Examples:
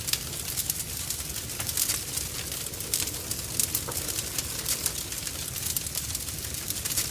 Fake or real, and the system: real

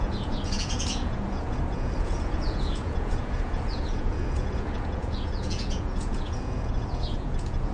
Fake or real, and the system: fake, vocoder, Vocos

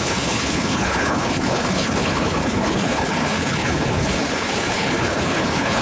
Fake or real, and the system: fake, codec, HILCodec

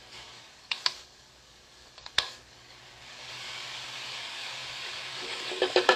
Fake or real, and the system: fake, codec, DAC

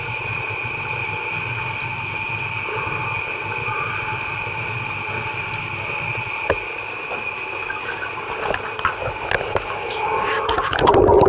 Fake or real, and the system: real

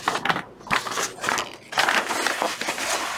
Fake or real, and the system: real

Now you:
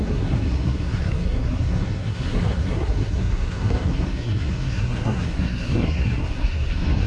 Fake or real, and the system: fake, codec, SNAC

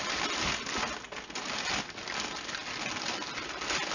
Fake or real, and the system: real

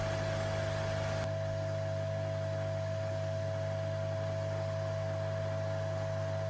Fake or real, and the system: real